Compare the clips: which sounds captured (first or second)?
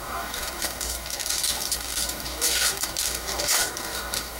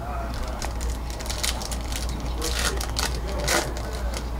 second